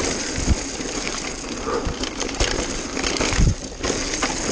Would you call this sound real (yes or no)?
yes